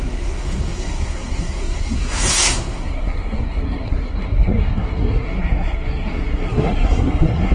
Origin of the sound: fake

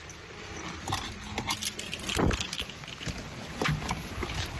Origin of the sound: real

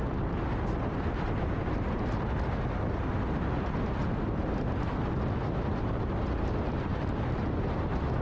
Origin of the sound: real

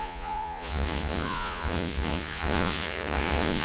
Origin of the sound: fake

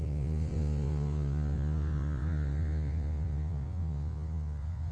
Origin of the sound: fake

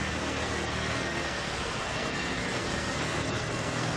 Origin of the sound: fake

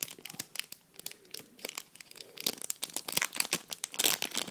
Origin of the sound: real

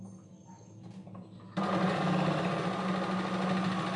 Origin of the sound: real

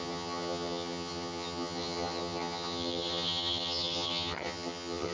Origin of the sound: fake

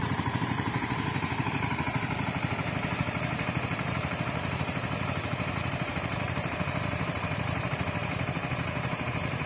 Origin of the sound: fake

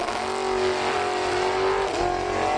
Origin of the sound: real